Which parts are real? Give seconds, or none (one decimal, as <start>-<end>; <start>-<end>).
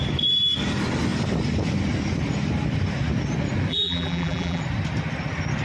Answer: 0.0-3.7; 4.6-5.6